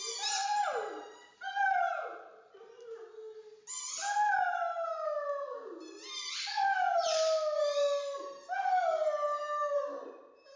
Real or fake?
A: real